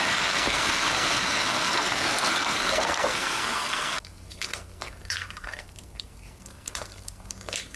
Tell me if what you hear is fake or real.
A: fake